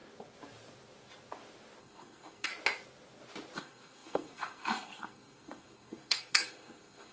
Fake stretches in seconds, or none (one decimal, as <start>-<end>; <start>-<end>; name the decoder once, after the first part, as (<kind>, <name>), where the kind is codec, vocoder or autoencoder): 1.8-2.5 (codec, SNAC); 3.6-7.1